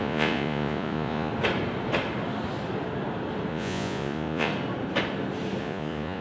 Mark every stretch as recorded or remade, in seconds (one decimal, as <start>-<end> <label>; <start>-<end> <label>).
0.0-1.3 remade; 1.3-3.5 recorded; 3.5-4.5 remade; 4.5-5.6 recorded; 5.6-6.2 remade